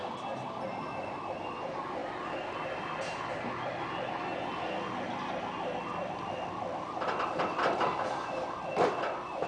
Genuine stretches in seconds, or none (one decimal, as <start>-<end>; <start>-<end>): 0.0-9.5